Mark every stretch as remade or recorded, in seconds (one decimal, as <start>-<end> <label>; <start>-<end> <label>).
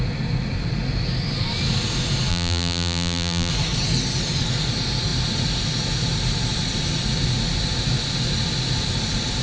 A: 0.0-2.3 recorded; 2.3-3.5 remade; 3.5-9.4 recorded